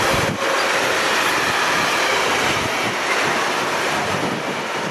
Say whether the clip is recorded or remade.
recorded